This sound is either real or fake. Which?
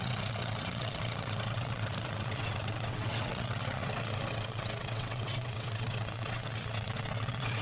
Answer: fake